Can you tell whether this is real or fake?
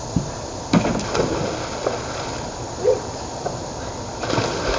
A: real